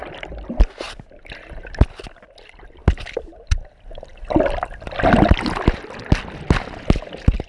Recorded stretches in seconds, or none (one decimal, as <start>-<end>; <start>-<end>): 0.0-7.5